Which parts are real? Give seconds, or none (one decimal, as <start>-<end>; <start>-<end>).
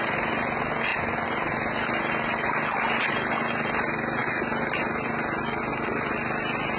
0.0-6.8